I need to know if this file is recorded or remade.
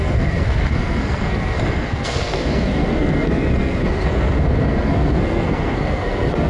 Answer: remade